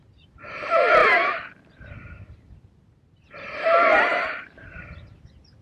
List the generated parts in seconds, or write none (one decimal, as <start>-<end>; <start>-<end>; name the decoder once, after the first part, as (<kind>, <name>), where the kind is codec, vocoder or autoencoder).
4.1-4.8 (vocoder, BigVGAN v2)